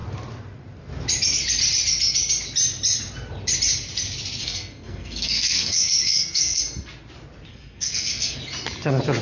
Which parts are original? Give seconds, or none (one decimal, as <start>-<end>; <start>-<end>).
0.0-4.4; 6.6-7.5; 8.4-9.2